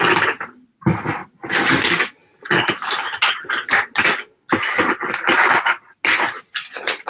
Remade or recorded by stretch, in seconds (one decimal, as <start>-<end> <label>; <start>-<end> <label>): 0.0-7.1 recorded